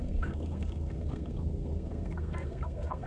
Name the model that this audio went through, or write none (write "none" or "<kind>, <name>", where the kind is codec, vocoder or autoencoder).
codec, SNAC